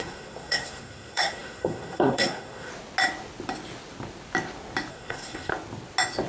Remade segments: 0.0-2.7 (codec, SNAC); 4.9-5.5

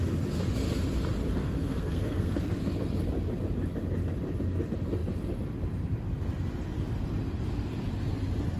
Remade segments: 1.4-2.6 (codec, SNAC)

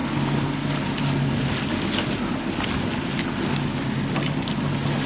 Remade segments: none

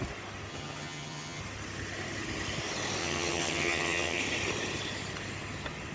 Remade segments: 0.5-1.4 (vocoder, HiFi-GAN); 3.0-4.2